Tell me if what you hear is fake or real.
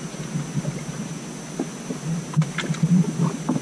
real